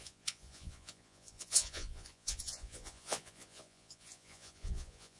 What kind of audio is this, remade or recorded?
remade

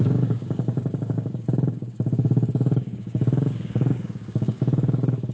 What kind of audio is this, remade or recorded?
remade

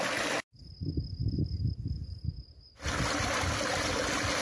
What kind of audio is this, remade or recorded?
recorded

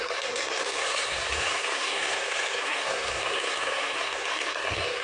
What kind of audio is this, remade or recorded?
remade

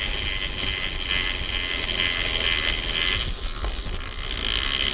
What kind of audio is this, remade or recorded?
recorded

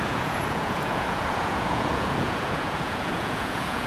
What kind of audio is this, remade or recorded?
remade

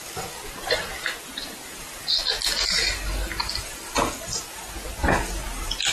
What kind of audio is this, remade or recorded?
recorded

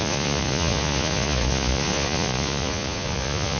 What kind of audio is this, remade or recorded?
remade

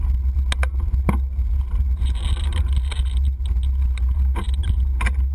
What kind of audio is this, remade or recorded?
recorded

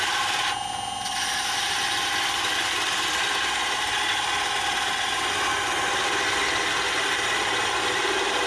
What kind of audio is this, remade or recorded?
recorded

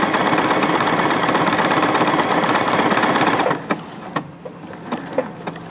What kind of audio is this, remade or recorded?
recorded